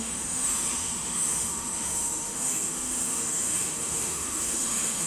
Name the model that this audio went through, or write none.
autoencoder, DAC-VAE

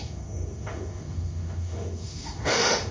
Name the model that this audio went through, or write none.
autoencoder, DAC-VAE